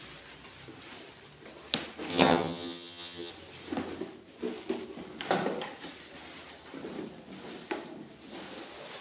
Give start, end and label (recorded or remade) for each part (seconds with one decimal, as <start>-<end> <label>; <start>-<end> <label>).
0.0-2.1 recorded; 2.1-3.3 remade; 3.3-9.0 recorded